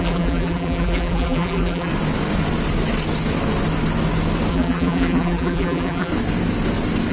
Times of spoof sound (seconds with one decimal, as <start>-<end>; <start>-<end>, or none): 0.0-1.9; 4.5-6.1